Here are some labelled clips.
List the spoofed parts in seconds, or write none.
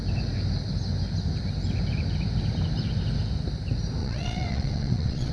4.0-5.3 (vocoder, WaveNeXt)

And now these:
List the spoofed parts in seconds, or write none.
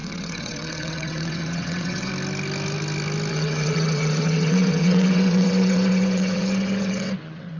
0.0-2.1 (vocoder, WaveNeXt); 3.3-7.6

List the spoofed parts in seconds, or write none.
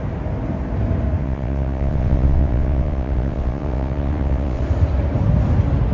1.2-4.6 (vocoder, WaveNeXt)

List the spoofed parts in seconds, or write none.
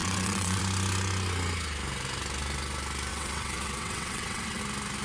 0.0-0.6 (vocoder, WaveNeXt); 3.1-4.6